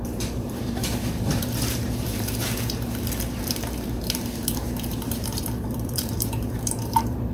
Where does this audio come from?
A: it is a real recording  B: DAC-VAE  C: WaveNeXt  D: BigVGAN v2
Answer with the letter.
D